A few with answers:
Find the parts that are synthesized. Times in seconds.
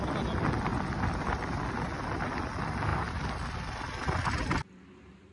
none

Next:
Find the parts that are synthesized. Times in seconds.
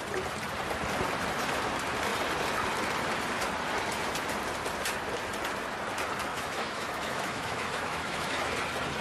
6.3-8.5 (autoencoder, DAC-VAE)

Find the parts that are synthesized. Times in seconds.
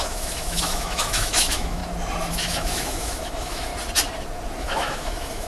0.0-1.8 (autoencoder, DAC-VAE); 2.3-3.7; 4.6-5.5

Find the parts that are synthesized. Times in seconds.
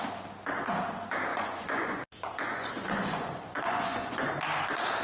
1.3-4.3 (vocoder, Vocos)